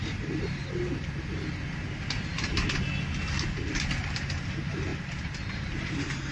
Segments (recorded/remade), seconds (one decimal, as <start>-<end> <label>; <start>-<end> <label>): 0.0-0.6 remade; 0.6-3.9 recorded; 3.9-6.3 remade